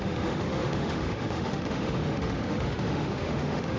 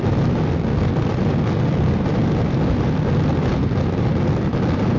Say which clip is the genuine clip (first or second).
second